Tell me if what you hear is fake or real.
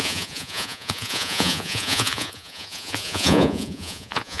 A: fake